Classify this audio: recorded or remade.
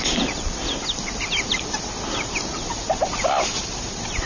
recorded